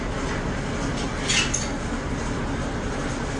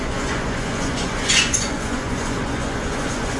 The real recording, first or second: first